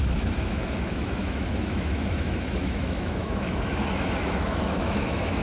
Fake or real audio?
fake